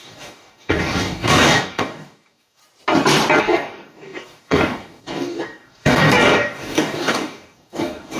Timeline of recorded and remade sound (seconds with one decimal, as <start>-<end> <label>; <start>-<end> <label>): 0.0-2.6 remade; 2.6-3.4 recorded; 3.4-8.2 remade